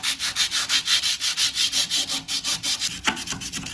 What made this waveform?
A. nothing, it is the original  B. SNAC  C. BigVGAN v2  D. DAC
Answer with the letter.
A